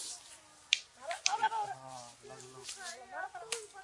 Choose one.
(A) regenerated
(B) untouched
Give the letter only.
B